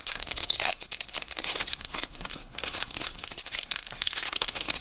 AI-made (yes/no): yes